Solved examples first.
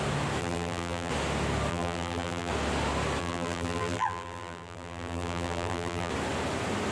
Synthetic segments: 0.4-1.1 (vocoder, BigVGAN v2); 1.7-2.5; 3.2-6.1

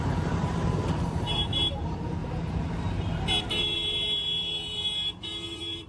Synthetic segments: 0.0-5.9 (vocoder, BigVGAN v2)

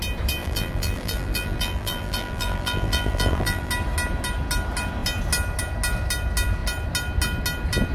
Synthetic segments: 0.4-3.7 (vocoder, BigVGAN v2)